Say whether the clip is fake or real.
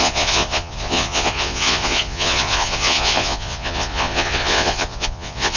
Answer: fake